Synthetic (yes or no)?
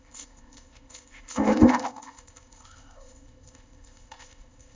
yes